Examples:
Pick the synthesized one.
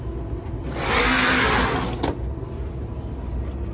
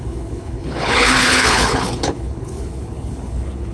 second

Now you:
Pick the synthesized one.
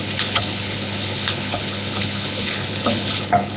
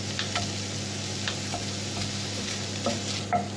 first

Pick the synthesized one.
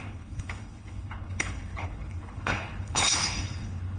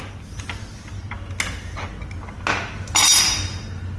first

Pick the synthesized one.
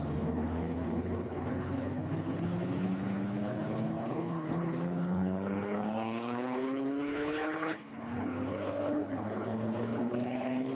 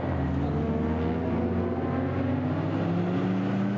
first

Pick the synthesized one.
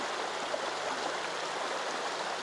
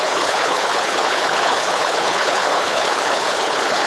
second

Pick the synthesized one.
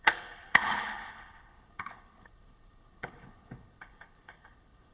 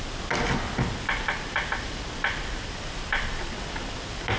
first